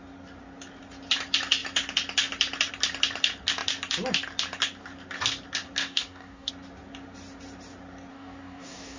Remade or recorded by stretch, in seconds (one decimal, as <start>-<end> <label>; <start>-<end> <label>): 0.0-5.8 recorded; 5.8-6.5 remade; 6.5-8.1 recorded; 8.1-9.0 remade